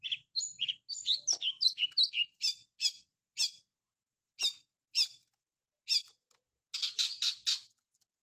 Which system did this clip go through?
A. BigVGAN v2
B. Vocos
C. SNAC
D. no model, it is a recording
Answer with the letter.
D